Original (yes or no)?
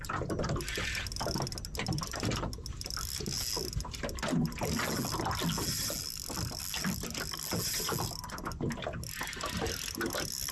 yes